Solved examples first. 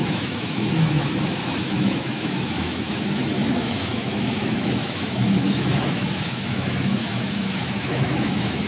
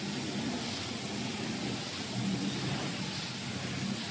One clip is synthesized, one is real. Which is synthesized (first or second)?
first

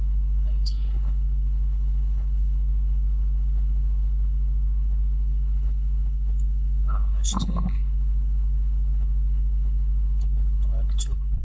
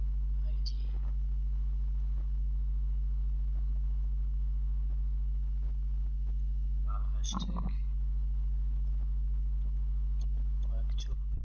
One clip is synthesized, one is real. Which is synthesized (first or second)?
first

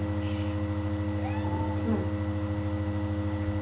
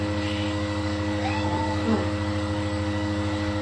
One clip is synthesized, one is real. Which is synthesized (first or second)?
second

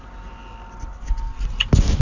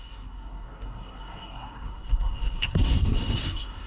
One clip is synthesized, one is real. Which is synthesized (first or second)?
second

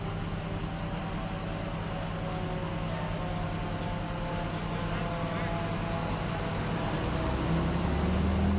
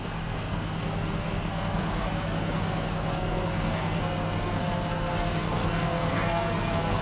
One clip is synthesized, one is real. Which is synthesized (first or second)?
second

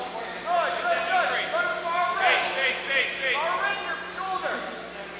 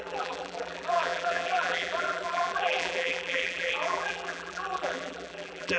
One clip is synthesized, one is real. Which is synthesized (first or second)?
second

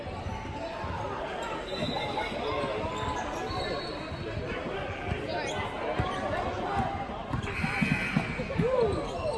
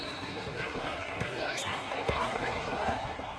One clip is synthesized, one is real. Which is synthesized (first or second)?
second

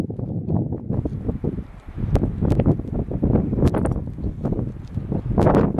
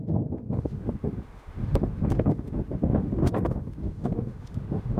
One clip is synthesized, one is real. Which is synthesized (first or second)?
second